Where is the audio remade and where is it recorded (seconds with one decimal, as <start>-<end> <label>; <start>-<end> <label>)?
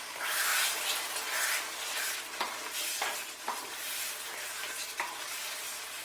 0.0-0.5 remade; 0.5-4.1 recorded; 4.1-6.0 remade